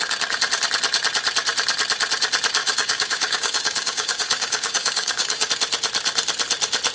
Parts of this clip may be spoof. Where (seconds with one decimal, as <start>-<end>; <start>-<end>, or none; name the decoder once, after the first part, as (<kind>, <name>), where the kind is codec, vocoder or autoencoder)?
2.6-5.5 (codec, DAC)